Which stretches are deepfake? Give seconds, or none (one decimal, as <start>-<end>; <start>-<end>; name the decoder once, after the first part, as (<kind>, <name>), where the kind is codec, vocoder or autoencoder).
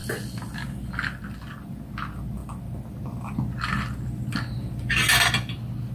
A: none